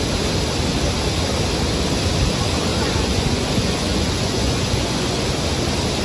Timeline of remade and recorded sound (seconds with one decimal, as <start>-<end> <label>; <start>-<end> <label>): 0.0-2.7 recorded; 2.7-5.2 remade; 5.2-6.0 recorded